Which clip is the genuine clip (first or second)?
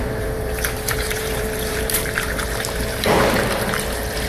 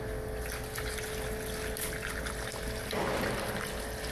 second